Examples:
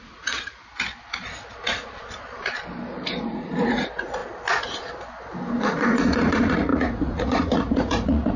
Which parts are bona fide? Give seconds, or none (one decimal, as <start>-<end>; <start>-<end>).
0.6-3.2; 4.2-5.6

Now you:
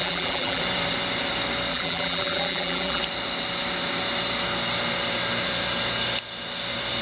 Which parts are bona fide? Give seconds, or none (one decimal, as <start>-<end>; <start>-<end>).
0.6-1.7; 3.0-7.0

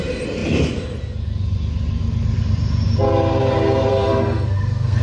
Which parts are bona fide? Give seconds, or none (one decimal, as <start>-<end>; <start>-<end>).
0.0-3.9

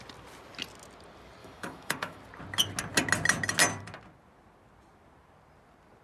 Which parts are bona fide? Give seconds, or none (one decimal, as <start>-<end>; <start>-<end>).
0.0-1.4; 2.2-6.0

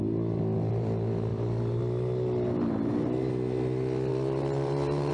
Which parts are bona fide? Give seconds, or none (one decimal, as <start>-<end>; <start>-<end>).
0.0-1.3; 1.8-4.1

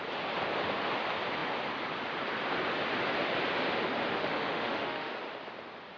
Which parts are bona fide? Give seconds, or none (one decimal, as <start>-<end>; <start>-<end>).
0.0-4.1; 5.1-6.0

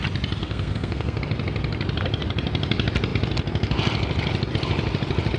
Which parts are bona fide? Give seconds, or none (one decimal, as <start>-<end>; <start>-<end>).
0.0-0.4; 1.2-5.4

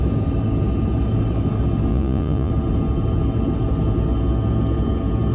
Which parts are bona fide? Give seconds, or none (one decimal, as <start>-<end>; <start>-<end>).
0.0-1.9; 2.5-5.3